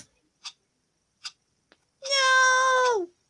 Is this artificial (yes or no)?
no